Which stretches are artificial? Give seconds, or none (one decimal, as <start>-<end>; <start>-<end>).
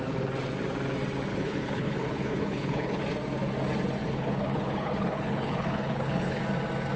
1.3-3.0; 4.0-6.4